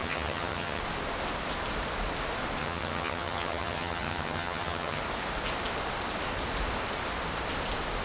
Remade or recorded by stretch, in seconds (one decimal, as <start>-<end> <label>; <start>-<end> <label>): 0.0-0.8 remade; 0.8-2.6 recorded; 2.6-5.0 remade; 5.0-8.0 recorded